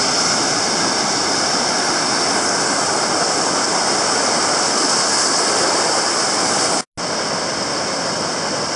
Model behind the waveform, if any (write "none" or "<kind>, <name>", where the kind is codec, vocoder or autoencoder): none